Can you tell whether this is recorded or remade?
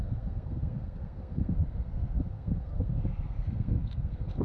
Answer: remade